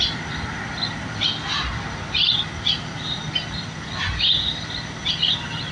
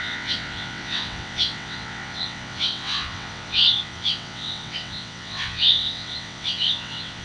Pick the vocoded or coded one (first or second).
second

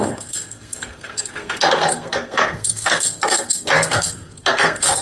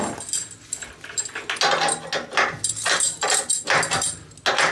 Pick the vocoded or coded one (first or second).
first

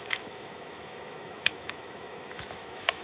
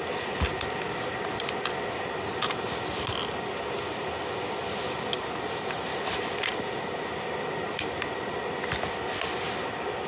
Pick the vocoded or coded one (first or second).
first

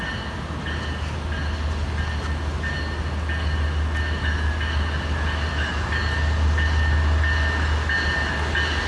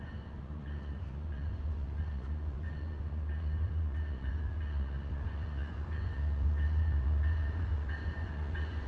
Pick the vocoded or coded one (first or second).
second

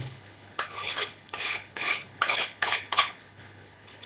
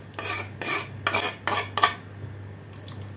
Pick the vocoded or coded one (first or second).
first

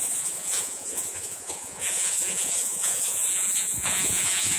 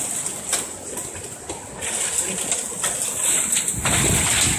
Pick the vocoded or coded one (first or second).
first